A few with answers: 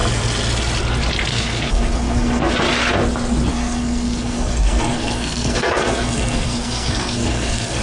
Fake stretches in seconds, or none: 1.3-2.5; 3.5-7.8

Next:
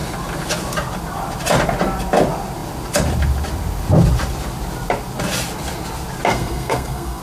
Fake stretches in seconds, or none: 6.3-7.2

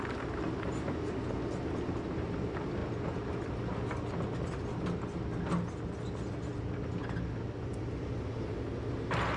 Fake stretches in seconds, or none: none